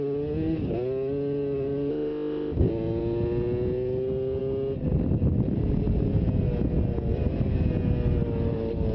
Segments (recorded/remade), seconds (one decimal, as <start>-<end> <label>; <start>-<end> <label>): 0.0-1.9 recorded; 1.9-2.7 remade; 2.7-8.9 recorded